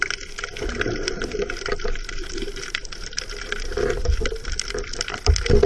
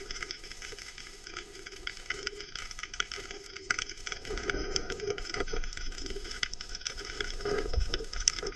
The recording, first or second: first